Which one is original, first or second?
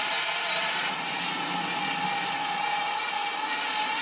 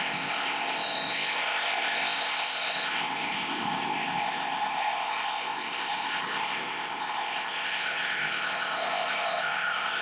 first